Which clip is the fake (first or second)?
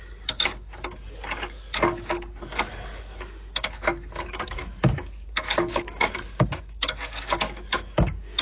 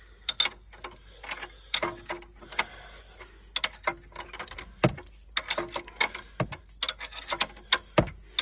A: first